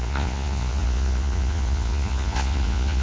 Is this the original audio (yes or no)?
no